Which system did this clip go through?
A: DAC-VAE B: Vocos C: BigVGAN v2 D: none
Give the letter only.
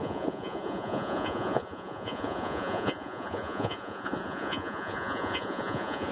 B